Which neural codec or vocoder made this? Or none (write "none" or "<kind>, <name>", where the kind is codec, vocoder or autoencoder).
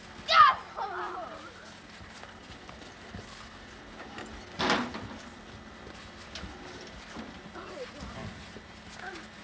none